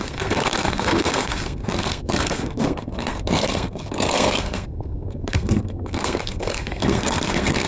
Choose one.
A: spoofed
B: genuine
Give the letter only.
A